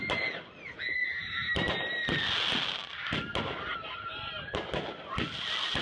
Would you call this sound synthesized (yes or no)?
no